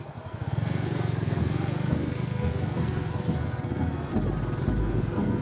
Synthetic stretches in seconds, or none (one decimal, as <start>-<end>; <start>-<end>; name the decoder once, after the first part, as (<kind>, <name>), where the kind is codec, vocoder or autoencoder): 0.0-4.1 (codec, SNAC); 4.8-5.4